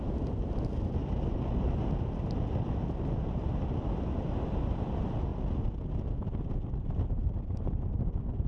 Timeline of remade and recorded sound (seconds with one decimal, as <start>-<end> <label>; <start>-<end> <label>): 0.0-8.5 recorded